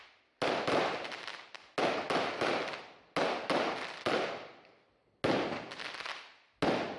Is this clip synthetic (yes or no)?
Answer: no